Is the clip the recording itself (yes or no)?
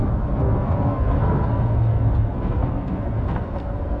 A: no